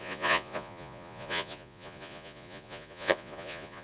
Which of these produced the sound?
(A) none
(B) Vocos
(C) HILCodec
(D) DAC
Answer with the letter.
B